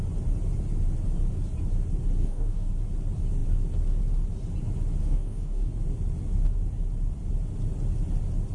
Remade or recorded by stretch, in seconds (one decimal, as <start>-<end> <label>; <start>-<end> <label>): 0.0-2.2 recorded; 2.2-2.7 remade; 2.7-5.0 recorded; 5.0-5.7 remade; 5.7-8.5 recorded